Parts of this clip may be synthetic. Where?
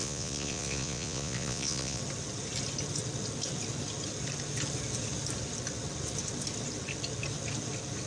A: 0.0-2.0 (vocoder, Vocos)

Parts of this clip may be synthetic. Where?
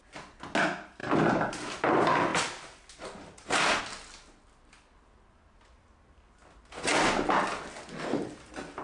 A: none